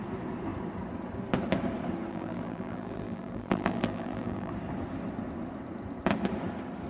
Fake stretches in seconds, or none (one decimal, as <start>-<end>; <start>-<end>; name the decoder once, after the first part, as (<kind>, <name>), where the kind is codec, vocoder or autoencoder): 2.1-4.5 (vocoder, BigVGAN v2)